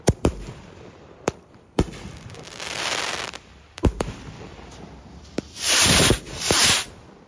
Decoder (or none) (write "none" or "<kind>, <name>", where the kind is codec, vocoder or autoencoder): vocoder, BigVGAN v2